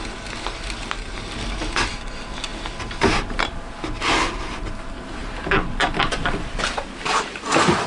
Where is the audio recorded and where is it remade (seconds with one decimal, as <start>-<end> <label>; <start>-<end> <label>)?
0.0-7.9 recorded